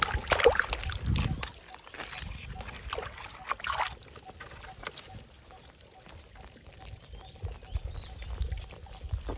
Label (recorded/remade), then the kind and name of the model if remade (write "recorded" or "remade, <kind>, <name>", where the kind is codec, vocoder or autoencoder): recorded